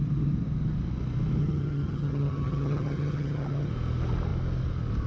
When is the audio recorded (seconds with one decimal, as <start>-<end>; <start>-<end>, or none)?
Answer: 0.0-1.4; 3.7-5.1